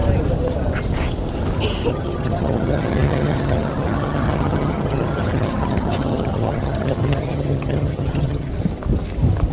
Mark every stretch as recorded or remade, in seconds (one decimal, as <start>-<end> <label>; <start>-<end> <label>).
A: 0.0-1.9 recorded; 1.9-8.5 remade; 8.5-9.5 recorded